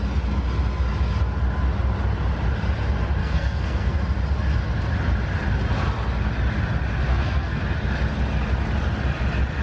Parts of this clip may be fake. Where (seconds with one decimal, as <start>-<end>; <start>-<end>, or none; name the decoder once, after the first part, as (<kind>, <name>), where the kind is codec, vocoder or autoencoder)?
3.2-4.0 (codec, SNAC); 7.1-7.6